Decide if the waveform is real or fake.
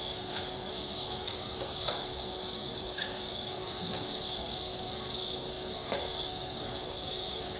fake